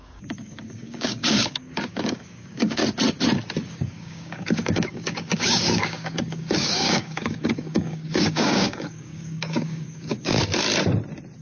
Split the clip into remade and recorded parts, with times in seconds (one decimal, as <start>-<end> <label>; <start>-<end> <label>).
0.0-2.8 remade; 2.8-3.7 recorded; 3.7-10.4 remade; 10.4-11.4 recorded